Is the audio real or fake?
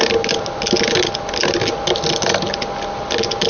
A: real